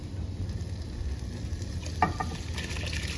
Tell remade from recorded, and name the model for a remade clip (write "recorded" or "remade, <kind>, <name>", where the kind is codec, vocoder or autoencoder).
recorded